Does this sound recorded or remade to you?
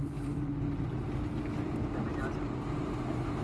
recorded